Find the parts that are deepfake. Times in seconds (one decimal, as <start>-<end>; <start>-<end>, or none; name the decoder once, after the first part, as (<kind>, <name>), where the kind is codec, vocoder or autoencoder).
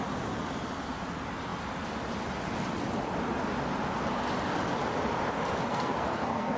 5.7-6.6 (codec, SNAC)